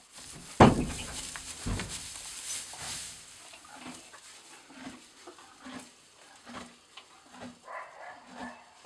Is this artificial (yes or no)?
no